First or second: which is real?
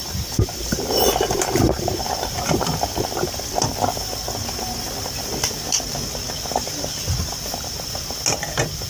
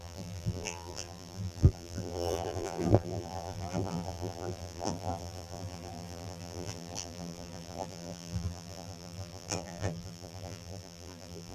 first